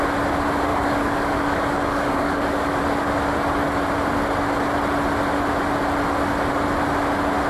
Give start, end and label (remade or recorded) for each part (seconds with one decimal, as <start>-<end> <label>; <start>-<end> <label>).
0.0-0.7 recorded; 0.7-2.8 remade; 2.8-7.5 recorded